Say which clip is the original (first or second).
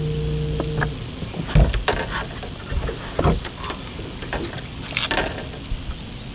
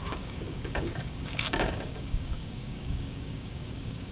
first